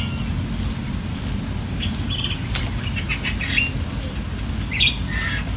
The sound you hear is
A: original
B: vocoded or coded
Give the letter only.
A